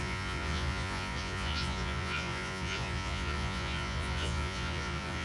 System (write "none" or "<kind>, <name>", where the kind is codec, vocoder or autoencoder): vocoder, Vocos